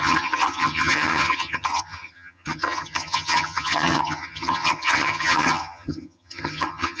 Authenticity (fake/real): fake